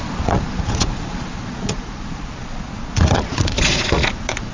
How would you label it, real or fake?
fake